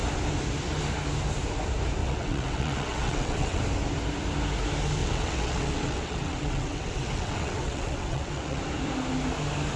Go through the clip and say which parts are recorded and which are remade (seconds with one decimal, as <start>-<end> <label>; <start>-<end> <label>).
0.0-2.0 recorded; 2.0-3.6 remade; 3.6-5.0 recorded; 5.0-8.6 remade; 8.6-9.8 recorded